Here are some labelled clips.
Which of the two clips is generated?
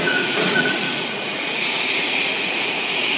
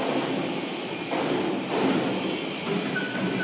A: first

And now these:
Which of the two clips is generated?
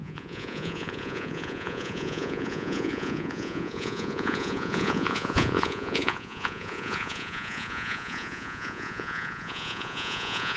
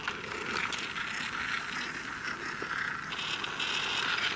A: first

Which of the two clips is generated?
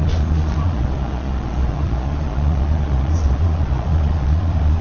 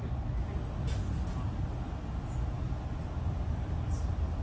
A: first